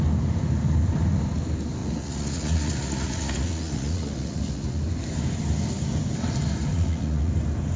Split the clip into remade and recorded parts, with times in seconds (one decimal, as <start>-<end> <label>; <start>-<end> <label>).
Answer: 0.0-1.8 recorded; 1.8-4.8 remade; 4.8-6.7 recorded; 6.7-7.3 remade; 7.3-7.8 recorded